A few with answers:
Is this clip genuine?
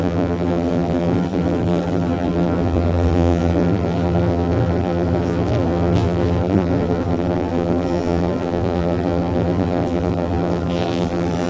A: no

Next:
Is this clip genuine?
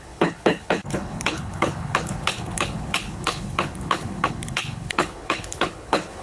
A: no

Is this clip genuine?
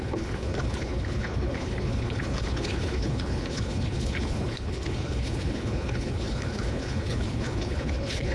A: no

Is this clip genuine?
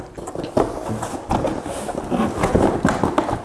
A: yes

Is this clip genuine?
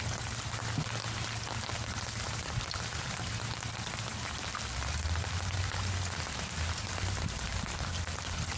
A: yes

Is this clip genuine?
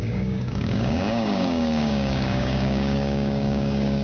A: no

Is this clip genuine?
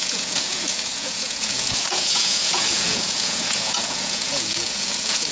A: no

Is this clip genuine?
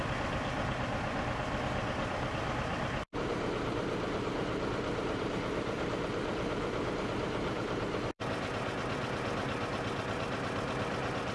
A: no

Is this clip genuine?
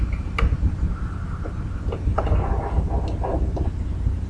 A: yes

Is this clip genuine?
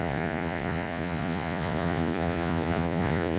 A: no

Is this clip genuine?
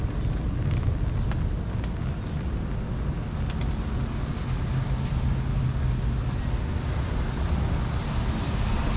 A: yes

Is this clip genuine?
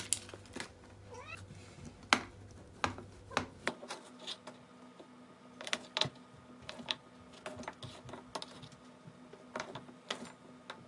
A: yes